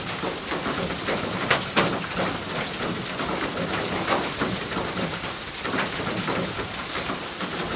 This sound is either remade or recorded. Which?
recorded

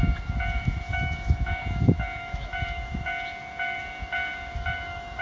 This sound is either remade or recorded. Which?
remade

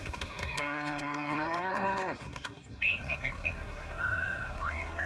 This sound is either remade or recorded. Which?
remade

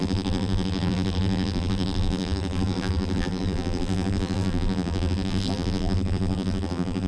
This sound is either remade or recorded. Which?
remade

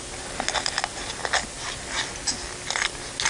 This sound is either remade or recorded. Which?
recorded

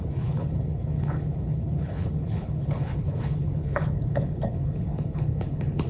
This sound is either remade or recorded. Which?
remade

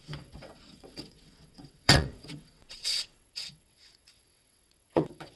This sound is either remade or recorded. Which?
remade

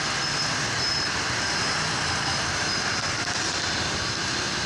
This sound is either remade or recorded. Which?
remade